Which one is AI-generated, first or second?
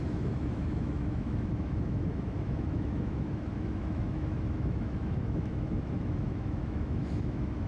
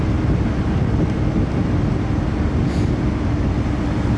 first